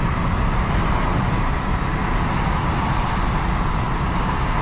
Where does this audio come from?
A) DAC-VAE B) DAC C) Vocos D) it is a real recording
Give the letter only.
D